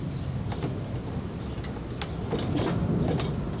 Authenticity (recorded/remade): recorded